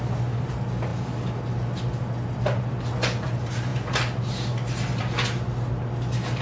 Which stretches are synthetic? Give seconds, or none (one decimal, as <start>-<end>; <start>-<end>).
none

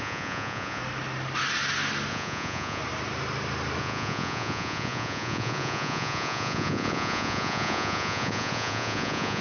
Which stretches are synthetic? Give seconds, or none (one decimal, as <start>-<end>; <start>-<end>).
0.0-0.8; 2.1-2.8; 3.8-9.4